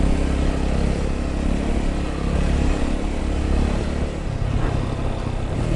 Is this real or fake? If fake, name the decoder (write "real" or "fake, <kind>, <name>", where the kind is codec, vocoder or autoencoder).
real